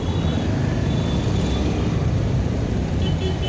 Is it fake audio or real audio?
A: real